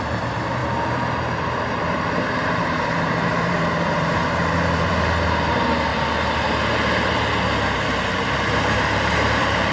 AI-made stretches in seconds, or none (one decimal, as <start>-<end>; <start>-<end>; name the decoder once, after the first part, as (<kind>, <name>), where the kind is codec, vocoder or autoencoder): 0.0-0.6 (vocoder, BigVGAN v2); 1.7-5.9; 8.5-9.7